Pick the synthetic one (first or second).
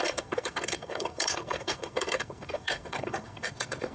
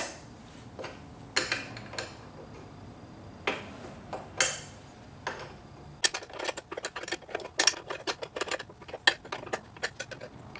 first